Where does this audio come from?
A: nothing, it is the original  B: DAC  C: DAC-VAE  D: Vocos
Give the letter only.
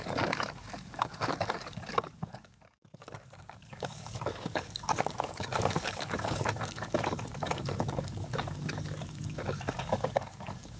B